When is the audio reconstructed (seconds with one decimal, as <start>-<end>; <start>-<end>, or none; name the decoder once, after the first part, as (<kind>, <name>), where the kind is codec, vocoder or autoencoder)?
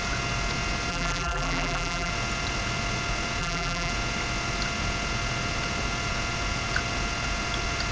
0.9-2.1 (vocoder, BigVGAN v2); 3.4-3.9